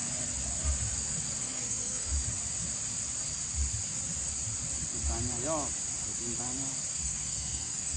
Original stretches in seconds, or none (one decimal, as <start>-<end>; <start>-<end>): 0.0-1.4; 2.1-6.9